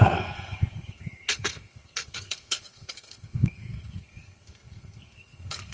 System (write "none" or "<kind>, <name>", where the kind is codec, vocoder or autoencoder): codec, SNAC